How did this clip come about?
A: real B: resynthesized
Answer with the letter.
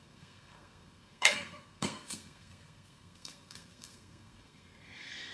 B